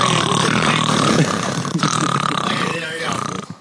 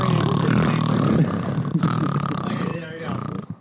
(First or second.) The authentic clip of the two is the second